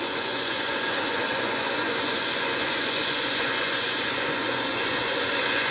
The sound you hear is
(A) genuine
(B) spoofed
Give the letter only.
B